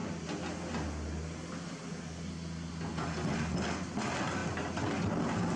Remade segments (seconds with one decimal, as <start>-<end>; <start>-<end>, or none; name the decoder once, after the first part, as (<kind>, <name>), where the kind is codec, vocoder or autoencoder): none